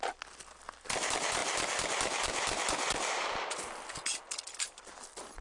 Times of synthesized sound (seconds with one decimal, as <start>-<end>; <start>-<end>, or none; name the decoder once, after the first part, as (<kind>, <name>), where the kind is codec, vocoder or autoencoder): 0.0-1.4 (vocoder, BigVGAN v2); 4.6-5.4